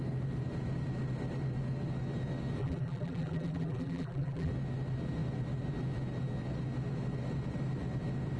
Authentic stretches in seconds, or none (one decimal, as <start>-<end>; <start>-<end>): 0.0-2.6; 4.5-8.4